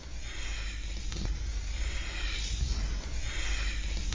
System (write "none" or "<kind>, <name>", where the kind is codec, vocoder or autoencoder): none